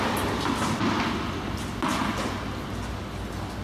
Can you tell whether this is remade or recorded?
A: recorded